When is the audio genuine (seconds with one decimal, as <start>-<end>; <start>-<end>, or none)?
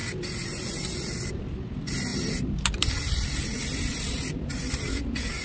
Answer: 0.0-5.4